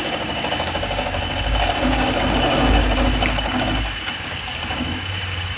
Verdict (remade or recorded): remade